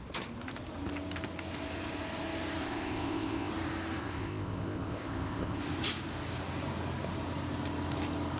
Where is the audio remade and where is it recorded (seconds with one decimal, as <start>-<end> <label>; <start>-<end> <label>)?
0.0-2.6 recorded; 2.6-3.5 remade; 3.5-4.0 recorded; 4.0-5.6 remade; 5.6-8.4 recorded